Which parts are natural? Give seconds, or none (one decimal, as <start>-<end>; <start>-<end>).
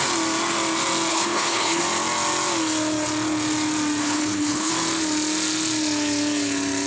0.0-1.1; 1.8-4.0; 4.7-6.9